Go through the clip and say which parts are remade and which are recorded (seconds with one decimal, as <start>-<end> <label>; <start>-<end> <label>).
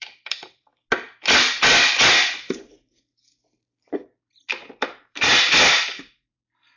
0.0-0.7 remade; 0.7-4.5 recorded; 4.5-5.3 remade; 5.3-5.8 recorded; 5.8-6.8 remade